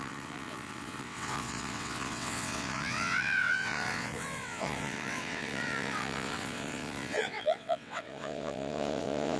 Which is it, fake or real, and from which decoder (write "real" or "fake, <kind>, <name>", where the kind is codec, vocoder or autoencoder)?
fake, vocoder, WaveNeXt